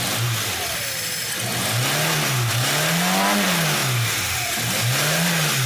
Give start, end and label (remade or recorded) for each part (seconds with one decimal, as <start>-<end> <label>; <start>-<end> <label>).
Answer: 0.0-5.7 recorded